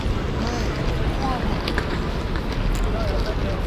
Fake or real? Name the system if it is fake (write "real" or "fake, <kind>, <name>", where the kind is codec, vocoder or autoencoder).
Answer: real